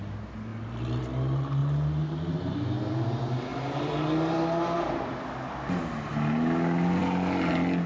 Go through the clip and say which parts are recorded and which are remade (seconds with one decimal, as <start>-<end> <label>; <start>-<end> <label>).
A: 0.0-7.9 recorded